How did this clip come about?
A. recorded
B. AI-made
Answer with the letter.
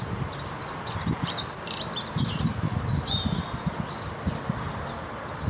A